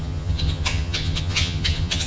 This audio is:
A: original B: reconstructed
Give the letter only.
B